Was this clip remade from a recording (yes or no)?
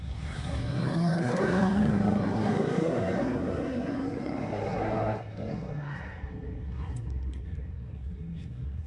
yes